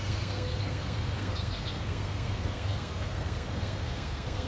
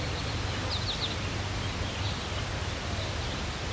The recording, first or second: second